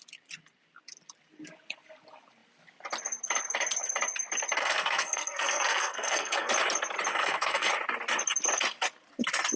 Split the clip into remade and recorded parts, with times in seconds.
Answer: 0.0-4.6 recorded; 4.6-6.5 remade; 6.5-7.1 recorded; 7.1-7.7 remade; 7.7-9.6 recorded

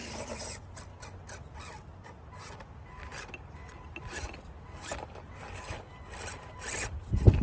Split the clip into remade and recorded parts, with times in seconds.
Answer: 0.0-7.4 recorded

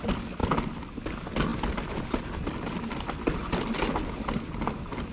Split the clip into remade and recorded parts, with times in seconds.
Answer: 0.0-5.1 recorded

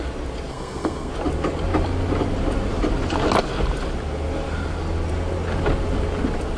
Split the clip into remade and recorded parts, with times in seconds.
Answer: 0.0-0.5 recorded; 0.5-1.1 remade; 1.1-6.6 recorded

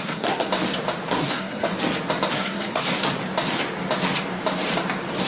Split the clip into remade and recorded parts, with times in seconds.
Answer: 0.0-0.5 remade; 0.5-1.1 recorded; 1.1-1.7 remade; 1.7-2.3 recorded; 2.3-3.0 remade; 3.0-5.3 recorded

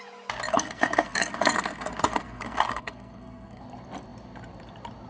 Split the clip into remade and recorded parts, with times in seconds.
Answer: 0.0-0.5 recorded; 0.5-3.6 remade; 3.6-5.1 recorded

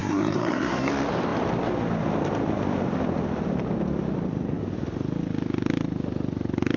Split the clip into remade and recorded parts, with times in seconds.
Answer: 0.0-0.9 remade; 0.9-6.8 recorded